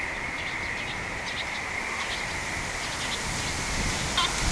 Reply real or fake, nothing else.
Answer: real